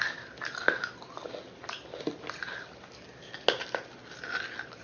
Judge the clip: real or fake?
real